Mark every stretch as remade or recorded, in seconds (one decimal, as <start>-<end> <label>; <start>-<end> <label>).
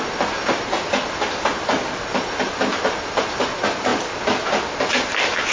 0.0-5.5 recorded